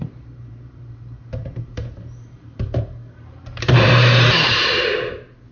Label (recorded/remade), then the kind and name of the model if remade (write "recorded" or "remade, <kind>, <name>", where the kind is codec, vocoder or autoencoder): remade, vocoder, BigVGAN v2